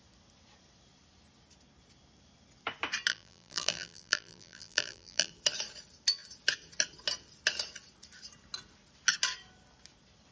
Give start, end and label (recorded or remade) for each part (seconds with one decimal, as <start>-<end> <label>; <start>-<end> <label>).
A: 0.0-3.1 recorded; 3.1-5.3 remade; 5.3-10.3 recorded